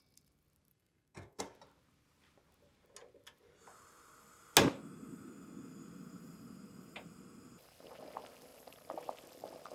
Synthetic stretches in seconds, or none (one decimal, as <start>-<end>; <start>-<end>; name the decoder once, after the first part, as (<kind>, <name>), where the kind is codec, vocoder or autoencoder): 0.7-1.4 (codec, SNAC)